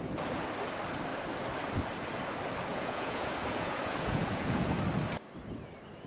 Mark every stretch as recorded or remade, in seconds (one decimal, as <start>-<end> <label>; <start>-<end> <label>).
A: 0.0-2.7 recorded; 2.7-4.7 remade; 4.7-6.1 recorded